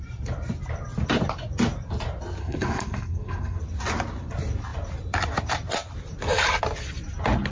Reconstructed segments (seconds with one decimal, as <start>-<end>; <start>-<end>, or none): 2.4-3.6